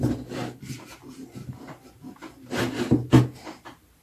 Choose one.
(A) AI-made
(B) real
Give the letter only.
B